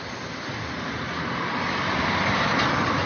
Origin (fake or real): real